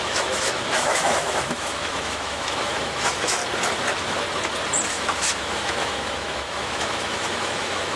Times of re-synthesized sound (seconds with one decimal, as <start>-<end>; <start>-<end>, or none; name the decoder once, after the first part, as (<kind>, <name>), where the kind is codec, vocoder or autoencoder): 0.0-3.4 (autoencoder, DAC-VAE); 4.9-8.0